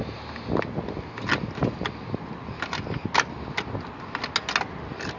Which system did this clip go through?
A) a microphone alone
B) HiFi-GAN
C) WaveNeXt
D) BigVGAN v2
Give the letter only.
A